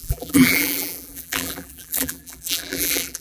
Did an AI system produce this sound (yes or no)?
yes